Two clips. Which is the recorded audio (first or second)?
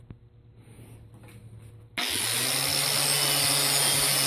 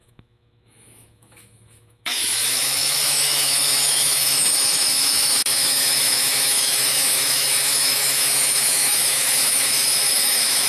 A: first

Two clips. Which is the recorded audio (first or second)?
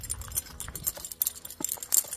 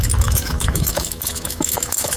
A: first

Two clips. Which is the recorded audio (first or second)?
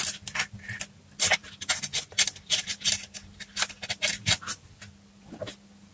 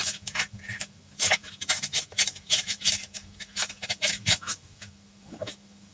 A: first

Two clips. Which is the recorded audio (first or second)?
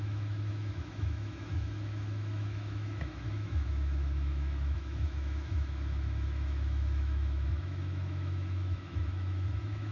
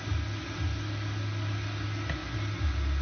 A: second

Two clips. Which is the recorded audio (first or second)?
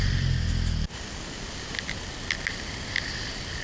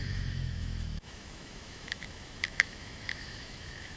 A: first